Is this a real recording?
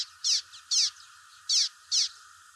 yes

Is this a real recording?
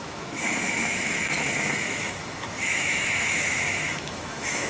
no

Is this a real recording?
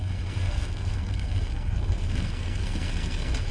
no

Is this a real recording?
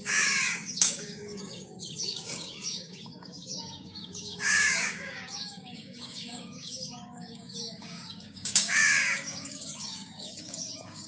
no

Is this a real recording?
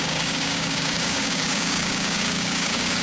no